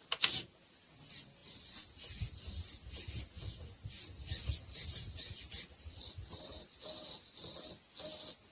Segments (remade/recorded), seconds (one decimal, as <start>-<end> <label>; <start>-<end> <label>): 0.0-8.5 recorded